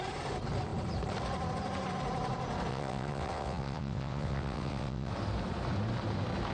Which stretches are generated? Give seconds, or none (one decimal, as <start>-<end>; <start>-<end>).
2.7-5.1